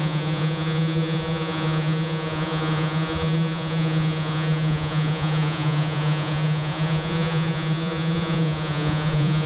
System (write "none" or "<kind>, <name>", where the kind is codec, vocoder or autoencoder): vocoder, Vocos